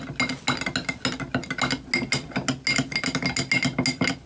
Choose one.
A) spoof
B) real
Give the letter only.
B